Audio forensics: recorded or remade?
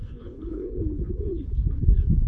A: remade